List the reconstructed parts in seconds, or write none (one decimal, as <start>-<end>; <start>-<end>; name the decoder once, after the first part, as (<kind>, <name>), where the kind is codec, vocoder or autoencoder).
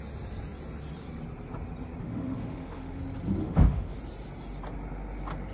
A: 2.0-3.0 (autoencoder, DAC-VAE); 3.4-4.0